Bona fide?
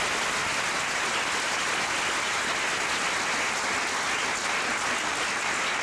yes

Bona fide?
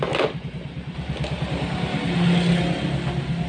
yes